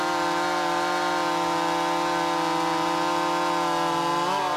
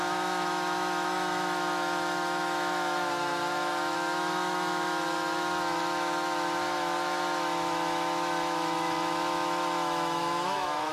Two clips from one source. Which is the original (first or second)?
first